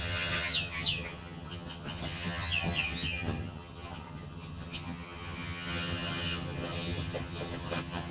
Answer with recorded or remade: remade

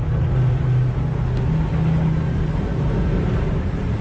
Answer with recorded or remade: recorded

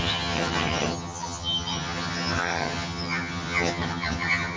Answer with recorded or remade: remade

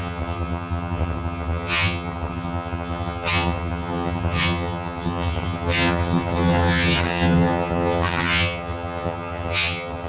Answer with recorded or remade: remade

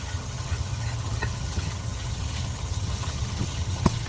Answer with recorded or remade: remade